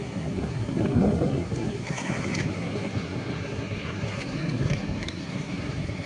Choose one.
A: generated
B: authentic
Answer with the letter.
A